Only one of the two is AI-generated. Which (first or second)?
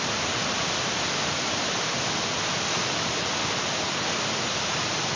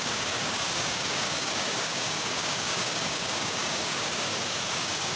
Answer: second